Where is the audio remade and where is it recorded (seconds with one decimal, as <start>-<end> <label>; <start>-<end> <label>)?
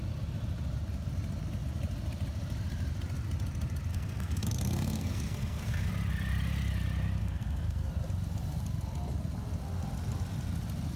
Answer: 0.0-3.9 recorded; 3.9-5.9 remade; 5.9-7.2 recorded; 7.2-7.9 remade; 7.9-11.0 recorded